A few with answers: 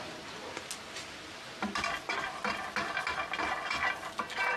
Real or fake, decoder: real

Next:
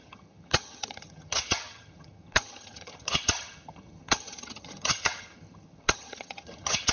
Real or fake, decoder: fake, vocoder, HiFi-GAN